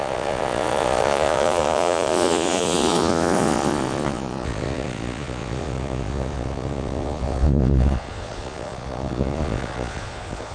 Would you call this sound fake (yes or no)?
yes